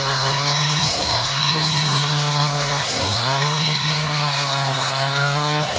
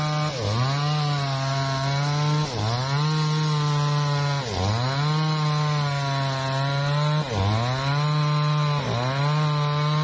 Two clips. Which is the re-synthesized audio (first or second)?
first